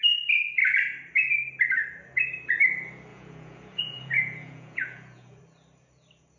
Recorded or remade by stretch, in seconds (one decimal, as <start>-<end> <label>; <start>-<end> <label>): 0.0-3.1 recorded; 3.1-5.4 remade; 5.4-6.4 recorded